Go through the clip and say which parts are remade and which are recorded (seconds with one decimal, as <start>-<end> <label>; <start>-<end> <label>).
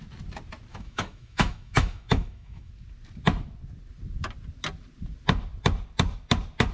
0.0-0.7 recorded; 0.7-2.7 remade; 2.7-6.7 recorded